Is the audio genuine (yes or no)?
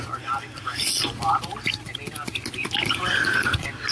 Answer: yes